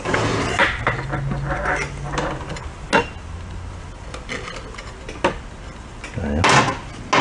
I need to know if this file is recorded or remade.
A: recorded